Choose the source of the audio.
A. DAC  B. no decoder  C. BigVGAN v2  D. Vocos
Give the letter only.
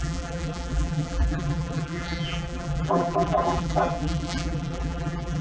C